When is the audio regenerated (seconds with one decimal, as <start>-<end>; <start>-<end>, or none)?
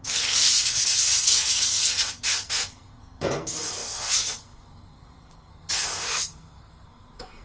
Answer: 0.0-7.4